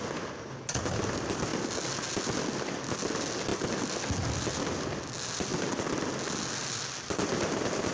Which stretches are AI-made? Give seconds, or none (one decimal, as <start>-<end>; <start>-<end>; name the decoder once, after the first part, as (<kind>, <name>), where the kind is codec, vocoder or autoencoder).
none